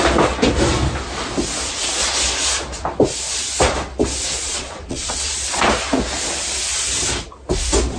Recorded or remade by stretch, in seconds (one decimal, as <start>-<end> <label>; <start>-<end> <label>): 0.0-4.5 recorded; 4.5-5.6 remade; 5.6-8.0 recorded